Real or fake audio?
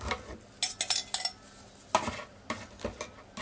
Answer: real